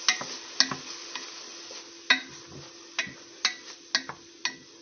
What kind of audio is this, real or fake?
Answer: real